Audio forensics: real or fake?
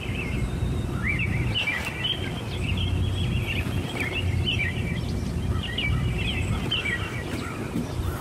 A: fake